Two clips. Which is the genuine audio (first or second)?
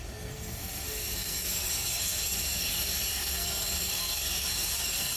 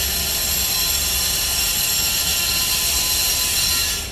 second